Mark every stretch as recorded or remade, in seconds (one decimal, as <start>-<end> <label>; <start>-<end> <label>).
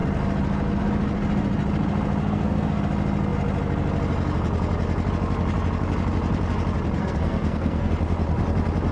0.0-2.2 recorded; 2.2-2.8 remade; 2.8-7.0 recorded; 7.0-7.9 remade; 7.9-8.9 recorded